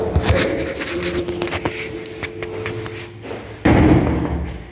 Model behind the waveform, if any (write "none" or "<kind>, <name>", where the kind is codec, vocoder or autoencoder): none